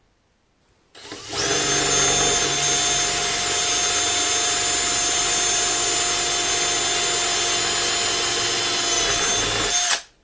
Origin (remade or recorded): recorded